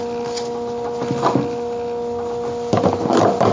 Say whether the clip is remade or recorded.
recorded